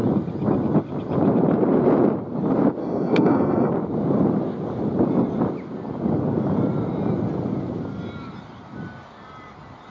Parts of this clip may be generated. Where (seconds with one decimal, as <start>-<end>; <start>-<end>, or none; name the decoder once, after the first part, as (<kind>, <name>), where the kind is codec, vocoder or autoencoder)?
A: 2.8-3.7 (codec, SNAC)